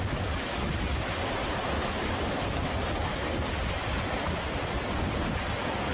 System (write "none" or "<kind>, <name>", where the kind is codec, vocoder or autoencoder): none